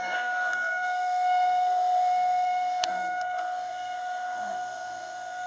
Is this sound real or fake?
fake